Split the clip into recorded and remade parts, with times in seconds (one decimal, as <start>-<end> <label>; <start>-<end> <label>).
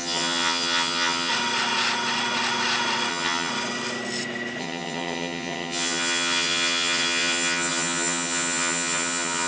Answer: 0.0-1.3 remade; 1.3-3.1 recorded; 3.1-3.5 remade; 3.5-4.6 recorded; 4.6-9.5 remade